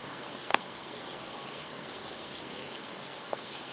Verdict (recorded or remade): remade